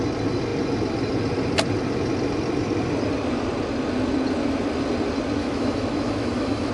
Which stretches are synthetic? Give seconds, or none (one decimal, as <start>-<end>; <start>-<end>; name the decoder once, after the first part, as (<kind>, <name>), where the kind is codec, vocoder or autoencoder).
5.4-6.7 (autoencoder, DAC-VAE)